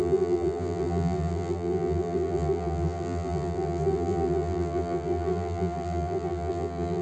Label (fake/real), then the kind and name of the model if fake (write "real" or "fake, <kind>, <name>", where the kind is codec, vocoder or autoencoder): fake, vocoder, BigVGAN v2